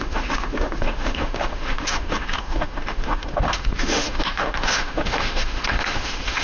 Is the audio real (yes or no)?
no